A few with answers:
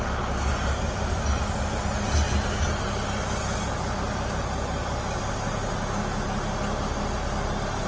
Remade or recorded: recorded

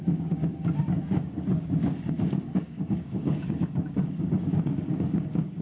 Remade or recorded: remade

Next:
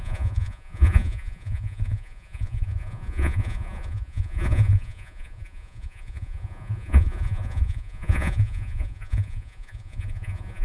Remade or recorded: remade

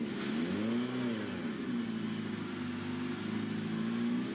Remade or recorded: recorded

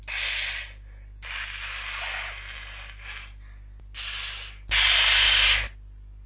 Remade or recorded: recorded